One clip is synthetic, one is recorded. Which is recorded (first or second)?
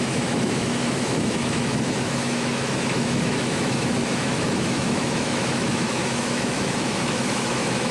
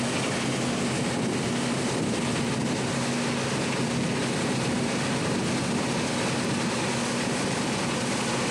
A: second